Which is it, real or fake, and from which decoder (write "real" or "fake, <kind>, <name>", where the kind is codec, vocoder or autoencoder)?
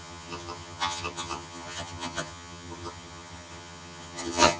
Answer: fake, vocoder, HiFi-GAN